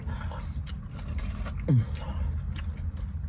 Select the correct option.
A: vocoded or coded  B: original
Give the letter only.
B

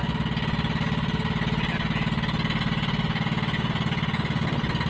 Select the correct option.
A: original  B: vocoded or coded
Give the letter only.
A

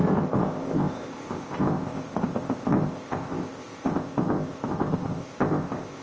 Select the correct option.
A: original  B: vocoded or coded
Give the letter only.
B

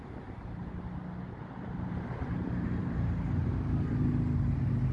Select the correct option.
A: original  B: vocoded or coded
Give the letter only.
A